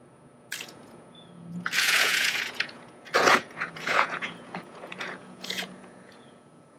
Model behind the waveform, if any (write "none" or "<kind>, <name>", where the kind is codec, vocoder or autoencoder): vocoder, Vocos